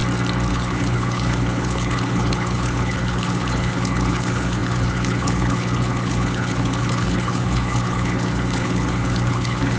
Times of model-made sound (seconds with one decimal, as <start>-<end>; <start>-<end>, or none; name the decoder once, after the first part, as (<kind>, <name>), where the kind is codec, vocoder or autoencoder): 0.5-9.8 (codec, HILCodec)